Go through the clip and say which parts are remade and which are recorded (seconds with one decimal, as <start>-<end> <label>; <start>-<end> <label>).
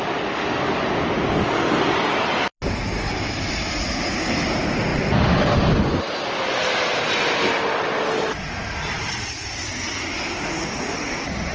0.0-11.5 recorded